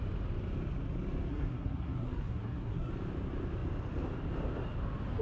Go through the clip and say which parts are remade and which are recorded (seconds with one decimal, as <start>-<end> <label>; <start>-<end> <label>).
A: 0.0-1.3 recorded; 1.3-2.9 remade; 2.9-5.2 recorded